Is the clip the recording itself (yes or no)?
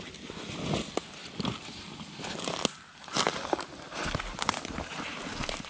yes